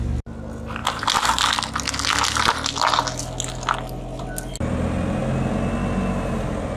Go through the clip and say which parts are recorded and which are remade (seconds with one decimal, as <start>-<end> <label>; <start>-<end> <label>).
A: 0.0-6.8 recorded